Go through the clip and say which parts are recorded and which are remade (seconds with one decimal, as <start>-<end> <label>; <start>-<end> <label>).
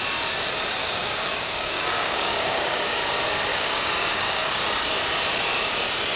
0.0-0.8 recorded; 0.8-3.0 remade; 3.0-3.5 recorded; 3.5-4.4 remade; 4.4-6.2 recorded